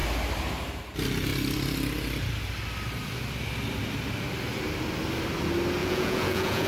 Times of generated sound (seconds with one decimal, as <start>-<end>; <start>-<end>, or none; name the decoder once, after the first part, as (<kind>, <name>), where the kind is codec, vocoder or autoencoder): 5.8-6.7 (vocoder, Vocos)

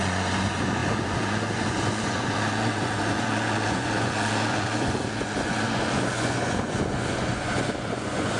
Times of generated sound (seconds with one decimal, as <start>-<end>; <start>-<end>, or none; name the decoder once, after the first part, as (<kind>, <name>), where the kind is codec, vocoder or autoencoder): 0.0-8.4 (vocoder, Vocos)

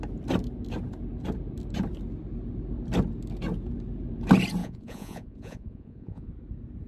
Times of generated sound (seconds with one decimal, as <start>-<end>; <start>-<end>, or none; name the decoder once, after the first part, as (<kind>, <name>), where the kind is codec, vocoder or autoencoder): 4.6-6.3 (vocoder, Vocos)

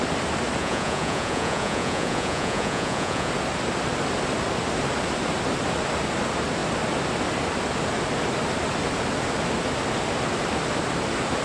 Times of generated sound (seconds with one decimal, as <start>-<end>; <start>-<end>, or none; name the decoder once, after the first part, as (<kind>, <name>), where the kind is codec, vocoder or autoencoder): 0.6-3.3 (vocoder, Vocos)

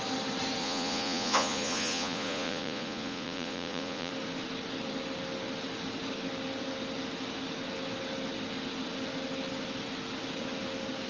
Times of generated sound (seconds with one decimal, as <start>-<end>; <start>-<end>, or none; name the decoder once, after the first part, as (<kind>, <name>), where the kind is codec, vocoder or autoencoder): 0.6-4.1 (vocoder, Vocos)

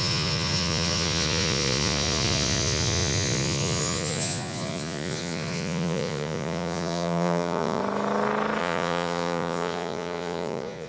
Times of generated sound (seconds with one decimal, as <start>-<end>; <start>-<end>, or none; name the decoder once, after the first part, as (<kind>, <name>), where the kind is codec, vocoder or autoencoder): 0.0-7.8 (vocoder, Vocos); 8.6-10.9

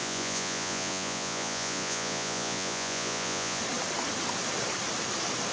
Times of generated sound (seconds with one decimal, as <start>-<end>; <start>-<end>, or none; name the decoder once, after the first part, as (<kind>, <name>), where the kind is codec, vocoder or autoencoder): 0.0-3.6 (vocoder, Vocos)